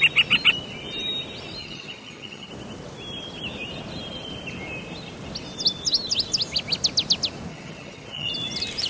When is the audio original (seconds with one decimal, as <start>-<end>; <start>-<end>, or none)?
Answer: 0.0-1.6; 2.5-7.5; 8.3-8.9